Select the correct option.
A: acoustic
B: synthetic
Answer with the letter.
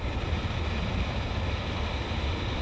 A